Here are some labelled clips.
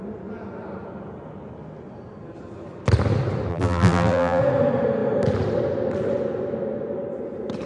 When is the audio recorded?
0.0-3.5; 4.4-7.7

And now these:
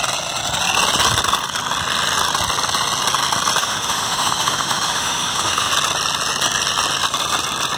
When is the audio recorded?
0.0-3.6; 5.7-7.8

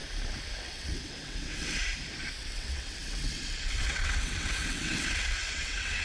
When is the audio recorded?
0.0-0.6; 1.8-2.4

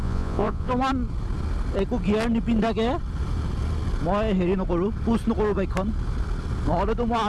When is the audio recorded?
0.7-7.3

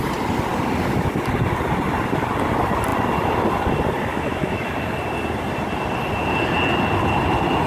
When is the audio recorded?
0.0-4.1; 4.7-7.7